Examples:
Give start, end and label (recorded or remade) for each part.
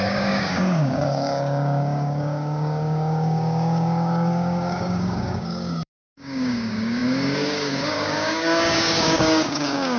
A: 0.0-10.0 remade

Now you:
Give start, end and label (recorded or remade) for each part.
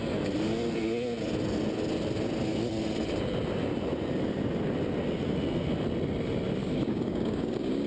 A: 0.0-6.6 recorded; 6.6-7.9 remade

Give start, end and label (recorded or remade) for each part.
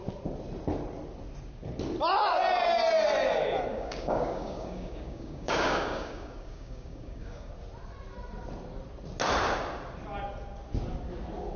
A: 0.0-3.7 recorded; 3.7-7.5 remade; 7.5-11.6 recorded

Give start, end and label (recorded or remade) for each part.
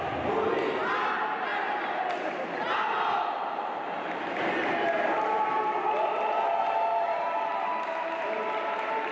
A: 0.0-9.1 recorded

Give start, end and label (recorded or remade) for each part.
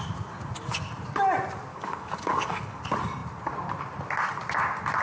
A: 0.0-1.7 recorded; 1.7-2.8 remade; 2.8-5.0 recorded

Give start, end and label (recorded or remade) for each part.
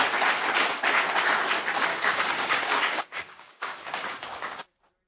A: 0.0-1.9 recorded; 1.9-4.6 remade; 4.6-5.1 recorded